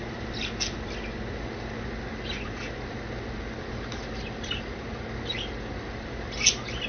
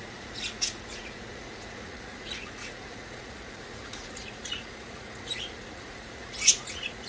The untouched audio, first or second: first